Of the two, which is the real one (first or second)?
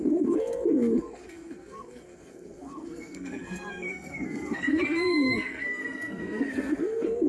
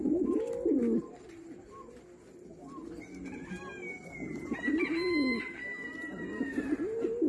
second